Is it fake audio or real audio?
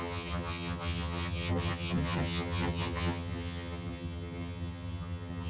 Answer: fake